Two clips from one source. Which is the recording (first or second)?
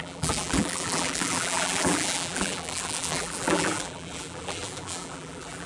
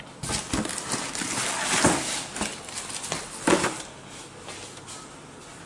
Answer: second